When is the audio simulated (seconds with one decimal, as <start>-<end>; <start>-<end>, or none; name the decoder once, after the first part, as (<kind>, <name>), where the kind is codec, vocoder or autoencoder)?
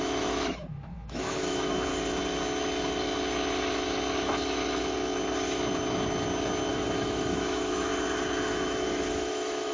0.0-1.9 (autoencoder, DAC-VAE); 6.7-7.9; 8.4-9.7